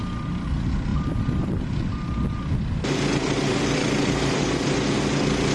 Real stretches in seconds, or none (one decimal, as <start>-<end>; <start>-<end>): 0.0-0.9; 1.4-3.1; 5.0-5.5